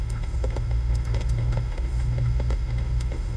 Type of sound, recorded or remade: remade